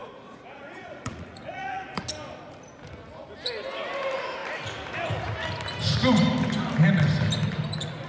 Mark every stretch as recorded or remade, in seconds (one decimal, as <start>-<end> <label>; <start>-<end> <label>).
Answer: 0.0-2.0 remade; 2.0-8.1 recorded

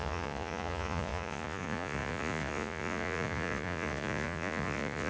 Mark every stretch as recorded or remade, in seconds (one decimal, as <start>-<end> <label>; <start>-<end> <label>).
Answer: 0.0-5.1 remade

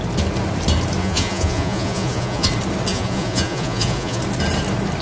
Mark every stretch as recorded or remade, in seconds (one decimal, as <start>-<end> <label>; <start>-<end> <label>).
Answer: 0.0-1.0 recorded; 1.0-2.5 remade; 2.5-2.9 recorded; 2.9-4.2 remade; 4.2-5.0 recorded

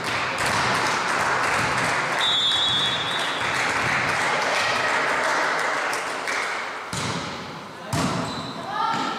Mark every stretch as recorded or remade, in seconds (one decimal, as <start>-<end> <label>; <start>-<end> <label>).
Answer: 0.0-9.2 recorded

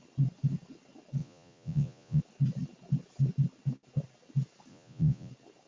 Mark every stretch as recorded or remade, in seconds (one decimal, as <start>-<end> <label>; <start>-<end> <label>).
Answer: 0.0-1.2 recorded; 1.2-2.2 remade; 2.2-4.7 recorded; 4.7-5.3 remade; 5.3-5.7 recorded